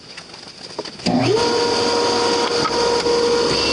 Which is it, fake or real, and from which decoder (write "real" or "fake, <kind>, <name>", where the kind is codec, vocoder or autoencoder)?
real